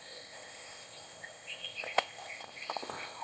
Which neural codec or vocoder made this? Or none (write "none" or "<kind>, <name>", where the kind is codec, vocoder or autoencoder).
codec, ZipCodec